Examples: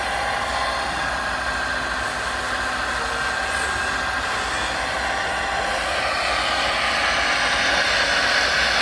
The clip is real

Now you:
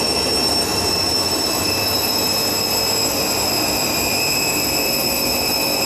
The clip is fake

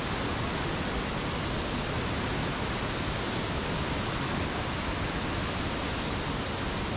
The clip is real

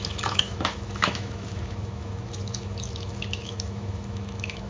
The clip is fake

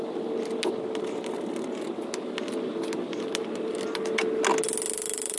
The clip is real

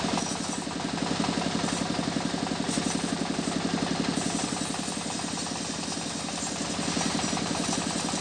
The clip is real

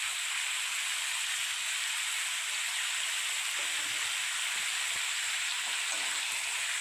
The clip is real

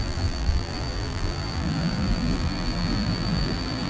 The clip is fake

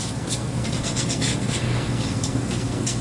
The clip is fake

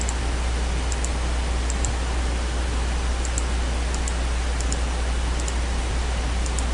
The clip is real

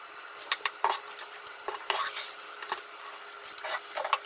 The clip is real